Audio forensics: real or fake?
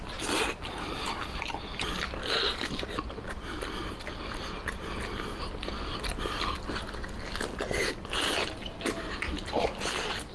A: real